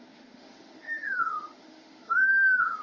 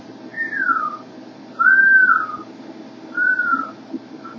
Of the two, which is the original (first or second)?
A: second